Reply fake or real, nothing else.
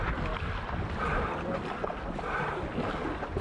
real